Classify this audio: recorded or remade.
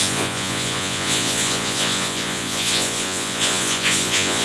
remade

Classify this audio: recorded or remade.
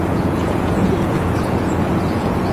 remade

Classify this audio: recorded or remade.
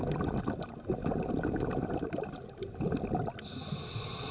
recorded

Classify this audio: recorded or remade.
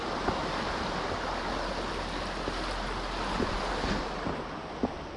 recorded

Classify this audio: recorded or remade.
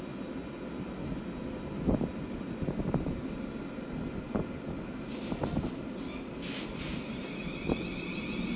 recorded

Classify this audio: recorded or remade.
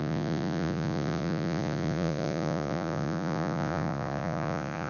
remade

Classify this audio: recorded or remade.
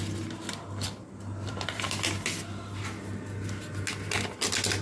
recorded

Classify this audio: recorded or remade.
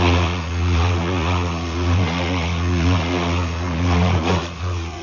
remade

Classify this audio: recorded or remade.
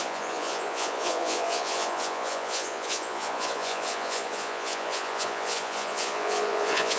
remade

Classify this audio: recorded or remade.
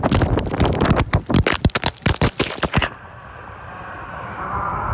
recorded